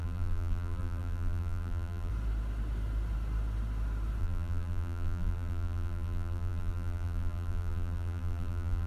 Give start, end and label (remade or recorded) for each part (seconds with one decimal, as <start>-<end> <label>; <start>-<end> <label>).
0.0-2.1 remade; 2.1-4.2 recorded; 4.2-8.9 remade